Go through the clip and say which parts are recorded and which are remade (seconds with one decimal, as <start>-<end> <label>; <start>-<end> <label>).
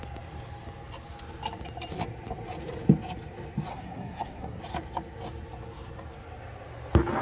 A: 0.0-3.7 recorded; 3.7-4.6 remade; 4.6-7.2 recorded